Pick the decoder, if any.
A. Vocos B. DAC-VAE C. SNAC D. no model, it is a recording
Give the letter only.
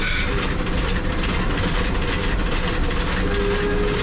D